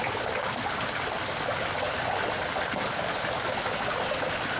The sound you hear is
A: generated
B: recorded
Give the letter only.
B